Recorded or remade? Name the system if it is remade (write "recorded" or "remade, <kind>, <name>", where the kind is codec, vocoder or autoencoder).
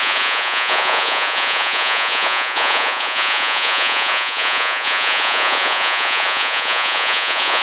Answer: remade, vocoder, Vocos